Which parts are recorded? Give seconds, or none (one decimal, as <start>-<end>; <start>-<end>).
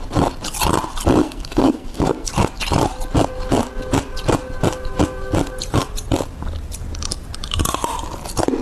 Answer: 0.0-1.2; 2.3-8.6